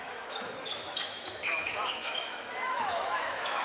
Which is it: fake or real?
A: fake